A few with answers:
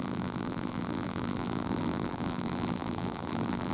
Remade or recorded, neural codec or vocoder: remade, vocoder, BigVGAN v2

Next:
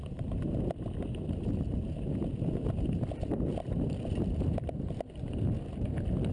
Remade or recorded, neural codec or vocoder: recorded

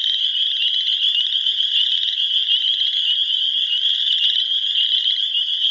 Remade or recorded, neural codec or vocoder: remade, vocoder, BigVGAN v2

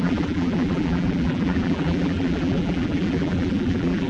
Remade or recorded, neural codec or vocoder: remade, vocoder, BigVGAN v2